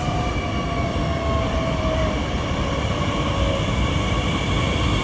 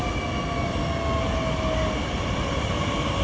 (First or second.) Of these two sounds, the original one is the second